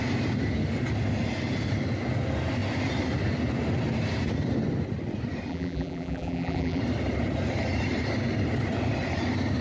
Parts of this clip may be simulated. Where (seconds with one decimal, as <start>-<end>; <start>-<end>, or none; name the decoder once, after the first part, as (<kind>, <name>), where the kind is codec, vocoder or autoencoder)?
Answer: 5.5-6.8 (vocoder, BigVGAN v2)